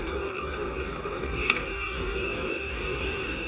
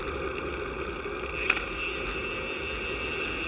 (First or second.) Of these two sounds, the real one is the second